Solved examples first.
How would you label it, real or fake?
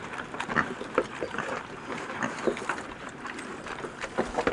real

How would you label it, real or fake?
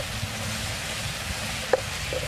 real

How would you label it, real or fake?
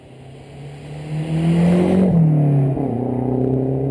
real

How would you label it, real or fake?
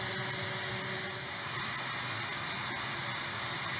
real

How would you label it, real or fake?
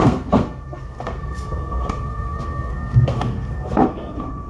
fake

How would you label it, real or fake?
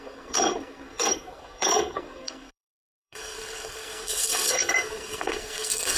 fake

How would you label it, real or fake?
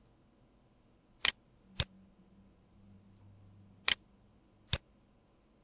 real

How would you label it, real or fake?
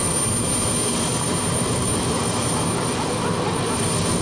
real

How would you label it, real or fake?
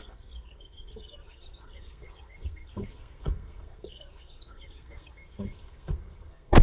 fake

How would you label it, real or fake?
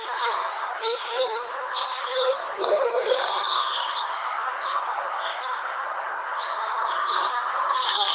fake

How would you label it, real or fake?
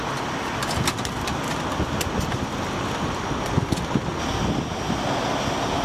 real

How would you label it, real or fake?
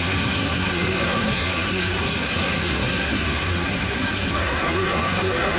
fake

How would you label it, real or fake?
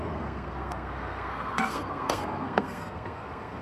fake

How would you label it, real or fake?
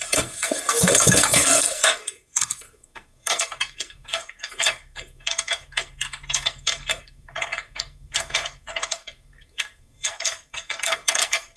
fake